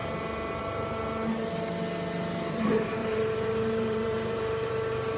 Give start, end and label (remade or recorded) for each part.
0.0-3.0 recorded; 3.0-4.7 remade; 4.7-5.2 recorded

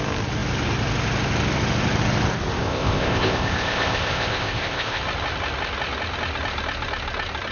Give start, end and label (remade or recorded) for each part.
0.0-2.6 recorded; 2.6-5.0 remade; 5.0-7.5 recorded